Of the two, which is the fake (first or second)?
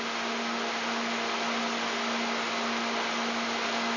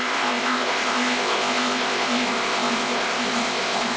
second